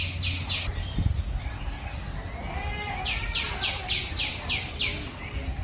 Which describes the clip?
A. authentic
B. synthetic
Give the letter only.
A